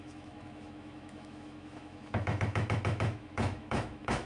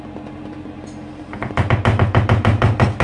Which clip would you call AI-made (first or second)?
first